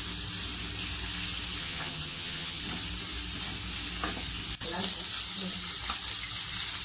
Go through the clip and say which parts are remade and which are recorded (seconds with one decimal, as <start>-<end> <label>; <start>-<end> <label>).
0.0-1.6 recorded; 1.6-2.6 remade; 2.6-6.8 recorded